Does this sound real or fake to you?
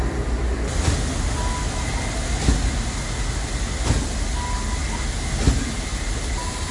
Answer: real